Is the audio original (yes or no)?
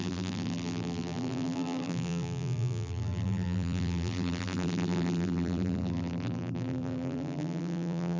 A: no